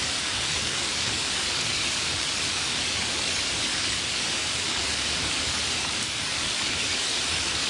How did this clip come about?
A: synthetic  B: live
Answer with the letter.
A